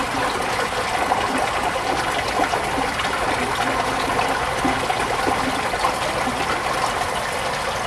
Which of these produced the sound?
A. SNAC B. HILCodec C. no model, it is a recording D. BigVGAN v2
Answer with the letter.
C